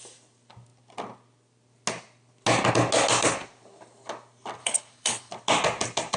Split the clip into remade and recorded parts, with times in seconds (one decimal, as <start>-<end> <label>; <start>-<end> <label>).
0.0-4.6 recorded; 4.6-5.3 remade; 5.3-6.2 recorded